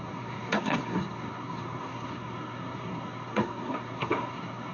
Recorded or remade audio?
remade